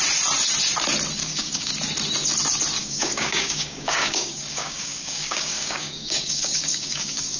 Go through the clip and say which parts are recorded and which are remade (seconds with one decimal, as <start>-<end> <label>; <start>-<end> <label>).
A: 0.0-1.2 recorded; 1.2-1.7 remade; 1.7-2.8 recorded; 2.8-7.4 remade